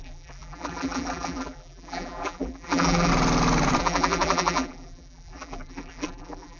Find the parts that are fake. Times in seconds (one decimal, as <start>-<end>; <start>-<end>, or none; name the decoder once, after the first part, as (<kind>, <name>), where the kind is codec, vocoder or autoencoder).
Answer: 0.0-3.1 (vocoder, BigVGAN v2); 3.8-6.6